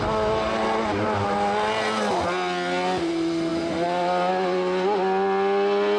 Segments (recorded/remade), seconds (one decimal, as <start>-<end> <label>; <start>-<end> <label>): 0.0-6.0 recorded